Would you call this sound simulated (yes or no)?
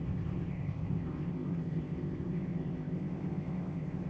yes